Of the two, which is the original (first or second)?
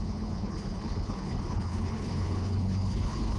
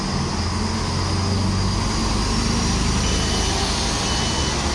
second